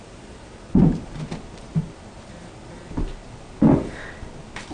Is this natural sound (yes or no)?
yes